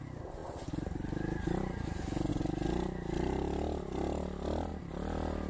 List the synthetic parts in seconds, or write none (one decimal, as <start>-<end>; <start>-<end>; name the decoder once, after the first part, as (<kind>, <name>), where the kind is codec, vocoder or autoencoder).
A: none